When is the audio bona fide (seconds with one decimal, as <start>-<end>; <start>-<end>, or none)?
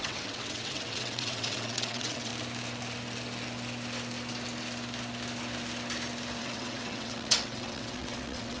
2.3-6.4